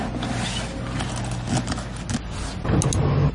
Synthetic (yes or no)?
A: no